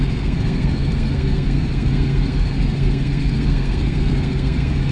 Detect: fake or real fake